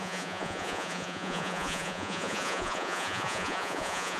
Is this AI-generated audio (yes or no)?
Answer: yes